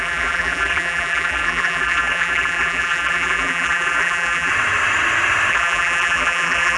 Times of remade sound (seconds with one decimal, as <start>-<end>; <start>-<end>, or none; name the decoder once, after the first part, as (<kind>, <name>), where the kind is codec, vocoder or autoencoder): 0.0-4.5 (vocoder, BigVGAN v2); 5.5-6.8

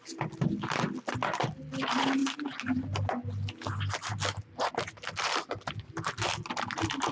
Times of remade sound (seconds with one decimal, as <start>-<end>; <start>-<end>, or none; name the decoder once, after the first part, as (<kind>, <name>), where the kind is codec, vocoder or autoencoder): none

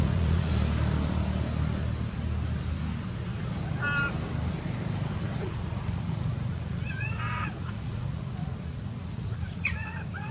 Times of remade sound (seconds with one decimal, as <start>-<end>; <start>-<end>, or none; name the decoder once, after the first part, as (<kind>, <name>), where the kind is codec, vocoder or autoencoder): 0.0-0.5 (vocoder, Vocos); 5.1-10.3